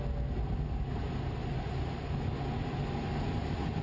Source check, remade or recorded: recorded